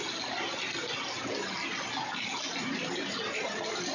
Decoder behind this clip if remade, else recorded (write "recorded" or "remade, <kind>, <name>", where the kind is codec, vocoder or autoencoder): recorded